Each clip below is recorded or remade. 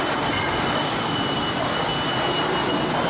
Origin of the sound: recorded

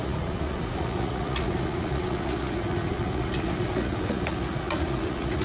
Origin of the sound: remade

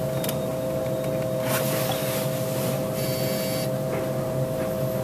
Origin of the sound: recorded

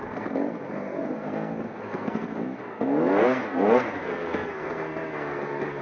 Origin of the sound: remade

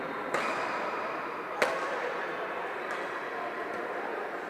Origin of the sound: recorded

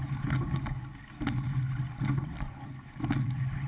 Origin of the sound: recorded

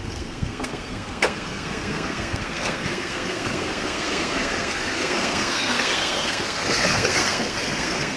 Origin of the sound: remade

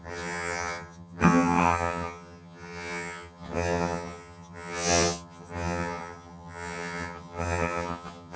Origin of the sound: remade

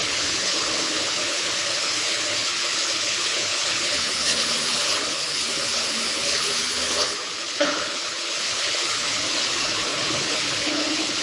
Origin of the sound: remade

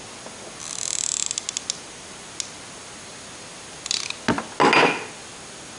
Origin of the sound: recorded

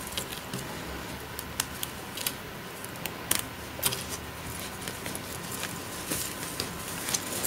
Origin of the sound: recorded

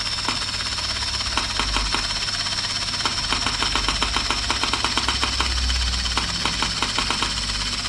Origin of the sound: recorded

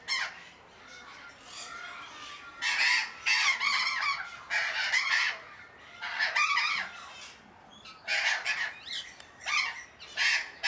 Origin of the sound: recorded